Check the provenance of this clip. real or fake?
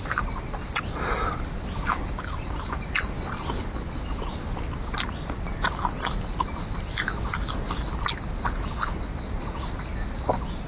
real